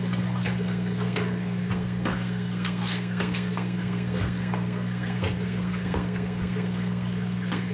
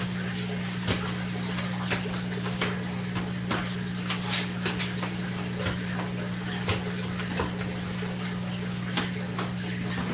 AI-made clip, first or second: first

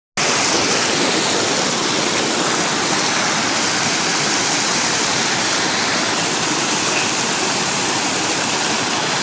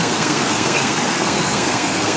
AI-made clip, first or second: second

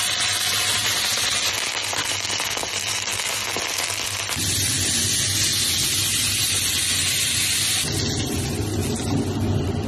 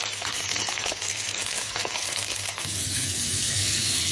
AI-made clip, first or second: second